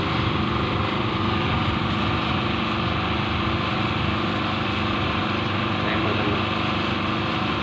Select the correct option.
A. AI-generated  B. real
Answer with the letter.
B